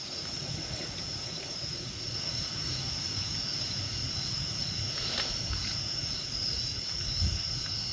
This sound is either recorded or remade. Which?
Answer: remade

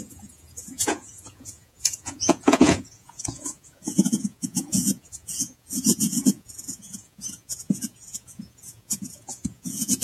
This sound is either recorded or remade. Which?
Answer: remade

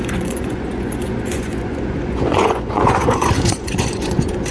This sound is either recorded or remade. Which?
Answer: remade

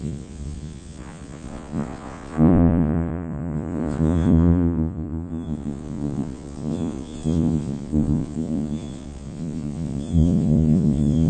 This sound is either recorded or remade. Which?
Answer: remade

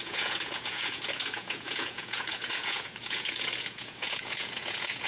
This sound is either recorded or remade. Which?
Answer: remade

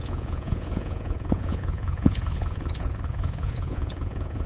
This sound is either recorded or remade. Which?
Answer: remade